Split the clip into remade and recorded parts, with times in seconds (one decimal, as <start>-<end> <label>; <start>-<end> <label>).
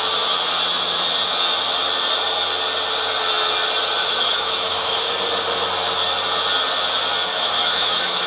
0.0-4.0 recorded; 4.0-5.1 remade; 5.1-7.3 recorded; 7.3-8.3 remade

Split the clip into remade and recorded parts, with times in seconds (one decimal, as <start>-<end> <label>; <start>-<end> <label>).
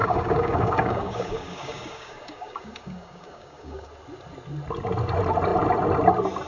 0.0-3.9 remade; 3.9-6.5 recorded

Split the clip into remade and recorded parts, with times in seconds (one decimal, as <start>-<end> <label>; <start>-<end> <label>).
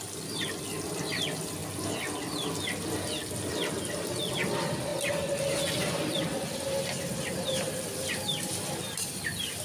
0.0-1.6 remade; 1.6-3.4 recorded; 3.4-4.9 remade; 4.9-5.8 recorded; 5.8-9.6 remade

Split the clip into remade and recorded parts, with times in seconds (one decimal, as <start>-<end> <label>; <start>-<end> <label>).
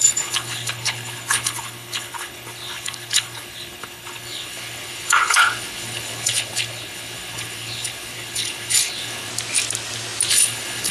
0.0-9.3 remade; 9.3-10.3 recorded; 10.3-10.9 remade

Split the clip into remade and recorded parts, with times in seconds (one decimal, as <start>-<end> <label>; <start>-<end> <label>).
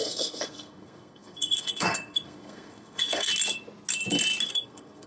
0.0-3.3 remade; 3.3-4.5 recorded; 4.5-5.1 remade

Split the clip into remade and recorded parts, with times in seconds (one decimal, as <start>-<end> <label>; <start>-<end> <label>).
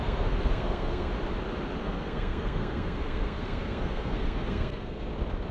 0.0-1.1 remade; 1.1-1.8 recorded; 1.8-5.1 remade; 5.1-5.5 recorded